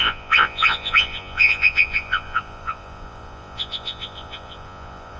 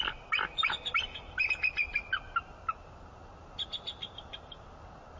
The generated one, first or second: first